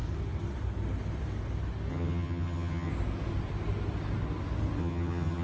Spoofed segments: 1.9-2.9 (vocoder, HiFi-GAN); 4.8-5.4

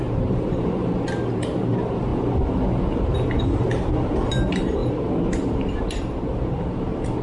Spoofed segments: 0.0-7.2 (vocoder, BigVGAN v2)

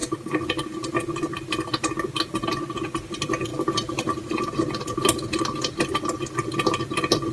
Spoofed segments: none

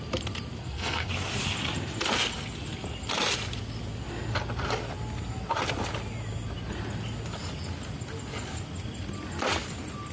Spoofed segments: 0.6-1.1 (codec, SNAC)